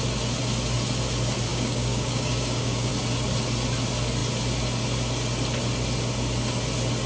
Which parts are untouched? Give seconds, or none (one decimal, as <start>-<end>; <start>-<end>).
0.0-1.5; 2.9-7.1